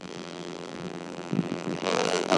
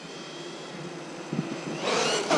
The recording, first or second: second